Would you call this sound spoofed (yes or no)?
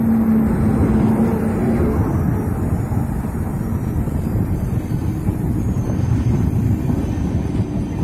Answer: no